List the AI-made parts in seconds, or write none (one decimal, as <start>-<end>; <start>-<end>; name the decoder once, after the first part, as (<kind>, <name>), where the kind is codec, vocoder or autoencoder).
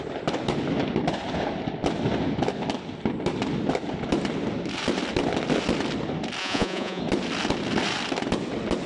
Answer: 6.4-7.0 (vocoder, Vocos)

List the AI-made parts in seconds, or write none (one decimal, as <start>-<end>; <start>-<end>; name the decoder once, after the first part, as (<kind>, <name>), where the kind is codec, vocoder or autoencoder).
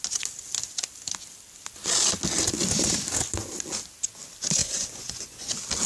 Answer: 4.6-5.5 (vocoder, Vocos)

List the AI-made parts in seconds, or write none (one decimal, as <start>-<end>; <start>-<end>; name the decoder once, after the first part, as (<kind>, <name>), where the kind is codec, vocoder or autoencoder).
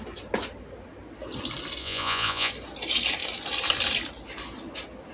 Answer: 1.8-2.5 (vocoder, Vocos)